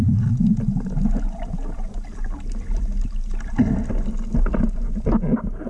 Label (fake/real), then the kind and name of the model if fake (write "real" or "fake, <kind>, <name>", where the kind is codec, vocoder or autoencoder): real